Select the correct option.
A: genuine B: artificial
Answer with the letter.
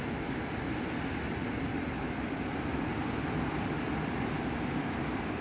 A